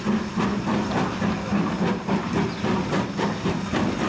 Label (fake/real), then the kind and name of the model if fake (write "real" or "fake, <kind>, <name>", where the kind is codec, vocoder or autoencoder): real